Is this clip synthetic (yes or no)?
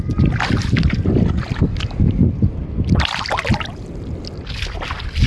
no